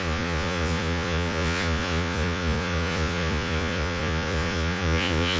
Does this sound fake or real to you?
fake